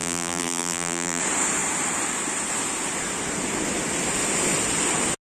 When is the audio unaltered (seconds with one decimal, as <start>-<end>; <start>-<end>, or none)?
1.2-5.2